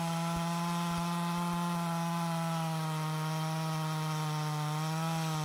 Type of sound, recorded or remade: recorded